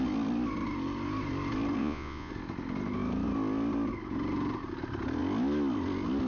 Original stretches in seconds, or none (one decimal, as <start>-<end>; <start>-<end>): 0.0-1.8; 2.3-6.3

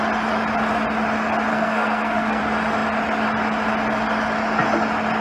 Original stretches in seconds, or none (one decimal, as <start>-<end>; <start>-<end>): 0.0-1.5; 2.4-5.2

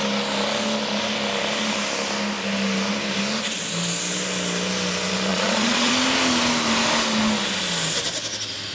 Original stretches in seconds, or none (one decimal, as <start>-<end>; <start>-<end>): 0.0-5.3; 5.9-8.7

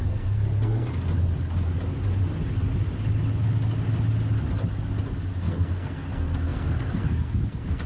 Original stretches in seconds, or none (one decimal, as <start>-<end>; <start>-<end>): 0.9-5.4

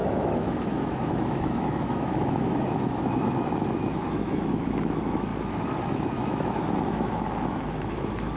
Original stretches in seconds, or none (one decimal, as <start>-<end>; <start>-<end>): none